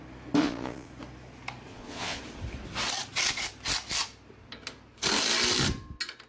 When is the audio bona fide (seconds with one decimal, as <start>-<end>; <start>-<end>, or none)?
0.0-0.4; 0.9-1.7; 2.2-6.3

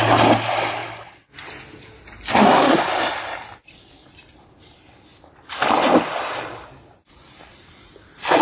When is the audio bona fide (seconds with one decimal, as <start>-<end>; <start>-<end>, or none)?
0.0-2.3; 2.8-8.4

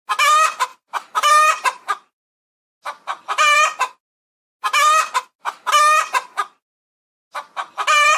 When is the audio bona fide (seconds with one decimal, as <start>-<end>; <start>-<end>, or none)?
0.0-0.7; 2.2-8.2

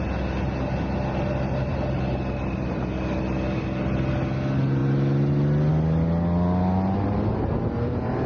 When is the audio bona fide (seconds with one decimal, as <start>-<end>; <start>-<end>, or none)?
0.0-8.3

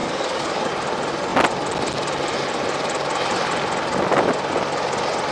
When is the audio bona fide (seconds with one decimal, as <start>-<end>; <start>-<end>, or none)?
0.7-5.3